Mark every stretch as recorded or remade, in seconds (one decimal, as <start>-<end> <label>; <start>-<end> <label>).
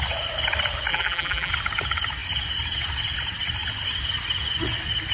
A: 0.0-0.9 recorded; 0.9-1.5 remade; 1.5-5.1 recorded